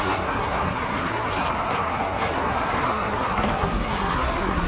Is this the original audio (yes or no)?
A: no